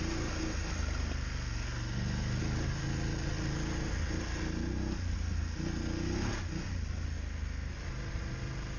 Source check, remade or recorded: recorded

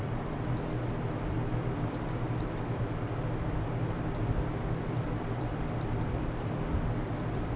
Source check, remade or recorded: remade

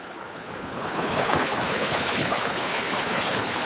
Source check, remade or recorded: remade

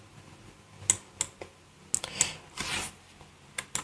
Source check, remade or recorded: recorded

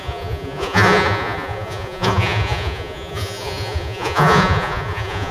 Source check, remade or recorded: remade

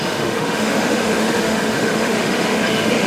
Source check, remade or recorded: remade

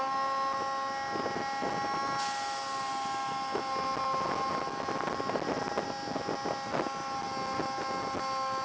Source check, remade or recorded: recorded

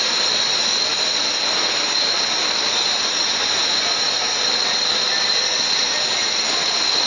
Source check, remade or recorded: recorded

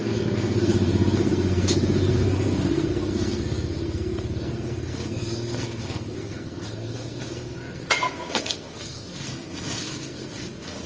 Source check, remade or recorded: remade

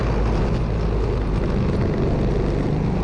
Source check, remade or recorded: recorded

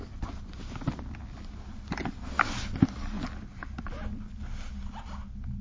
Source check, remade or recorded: recorded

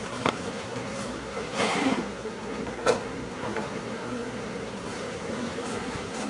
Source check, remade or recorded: remade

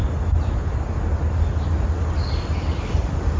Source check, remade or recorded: recorded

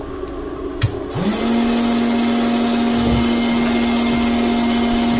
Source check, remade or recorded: recorded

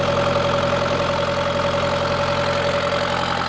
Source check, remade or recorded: recorded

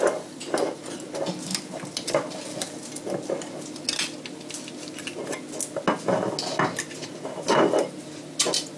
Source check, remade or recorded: recorded